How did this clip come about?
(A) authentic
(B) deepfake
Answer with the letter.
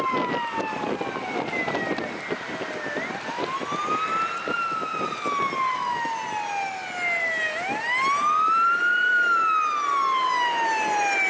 A